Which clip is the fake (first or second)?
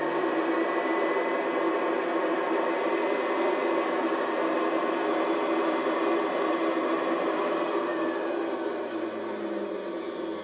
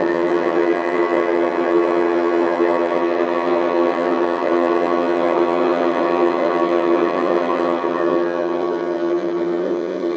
second